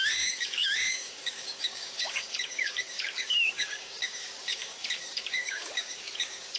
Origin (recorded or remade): remade